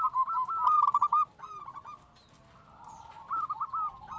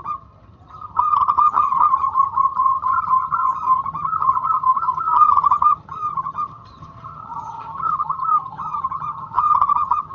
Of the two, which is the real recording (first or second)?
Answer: first